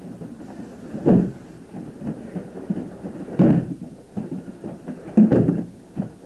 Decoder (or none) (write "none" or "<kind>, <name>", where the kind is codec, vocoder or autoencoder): vocoder, BigVGAN v2